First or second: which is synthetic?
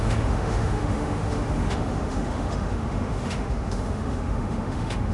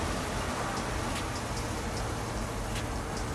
first